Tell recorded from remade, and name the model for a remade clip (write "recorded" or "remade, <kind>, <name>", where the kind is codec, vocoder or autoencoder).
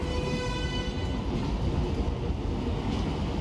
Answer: recorded